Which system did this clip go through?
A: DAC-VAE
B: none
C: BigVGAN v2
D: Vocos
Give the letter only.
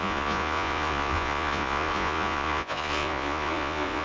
D